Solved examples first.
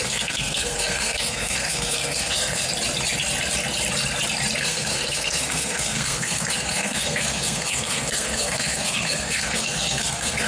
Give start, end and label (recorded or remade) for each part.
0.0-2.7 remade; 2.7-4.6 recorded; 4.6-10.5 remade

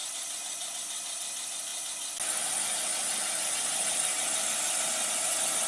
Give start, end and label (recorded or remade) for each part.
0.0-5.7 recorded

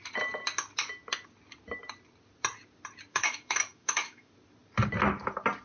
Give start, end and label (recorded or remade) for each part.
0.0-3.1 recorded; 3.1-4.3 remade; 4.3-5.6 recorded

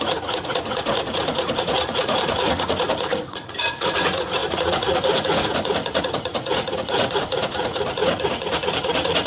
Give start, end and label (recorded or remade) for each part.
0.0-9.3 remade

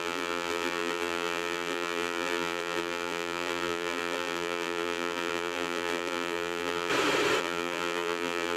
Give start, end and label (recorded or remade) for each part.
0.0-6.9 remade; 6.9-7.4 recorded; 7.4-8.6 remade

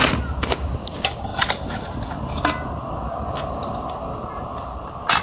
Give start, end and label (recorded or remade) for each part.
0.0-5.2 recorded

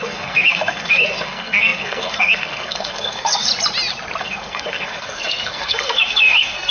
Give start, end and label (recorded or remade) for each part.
0.0-3.5 remade; 3.5-4.2 recorded; 4.2-6.7 remade